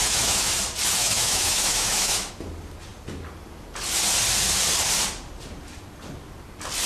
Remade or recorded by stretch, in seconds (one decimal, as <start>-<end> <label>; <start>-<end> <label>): 0.0-0.6 remade; 0.6-1.0 recorded; 1.0-2.3 remade; 2.3-6.9 recorded

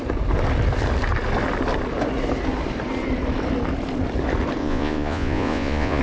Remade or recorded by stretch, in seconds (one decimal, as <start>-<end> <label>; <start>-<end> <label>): 0.0-4.6 recorded; 4.6-6.0 remade

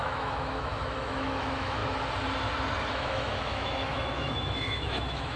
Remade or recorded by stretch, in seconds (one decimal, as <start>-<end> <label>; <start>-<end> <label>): 0.0-1.8 remade; 1.8-2.9 recorded; 2.9-5.4 remade